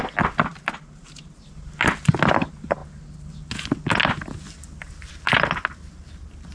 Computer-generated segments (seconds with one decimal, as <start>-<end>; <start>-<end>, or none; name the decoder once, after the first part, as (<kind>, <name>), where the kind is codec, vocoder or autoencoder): 0.5-1.3 (vocoder, BigVGAN v2)